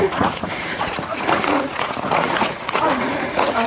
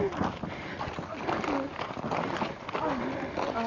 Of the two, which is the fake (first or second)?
first